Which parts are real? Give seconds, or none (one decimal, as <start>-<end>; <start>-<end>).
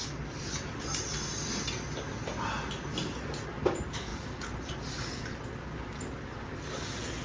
0.0-7.2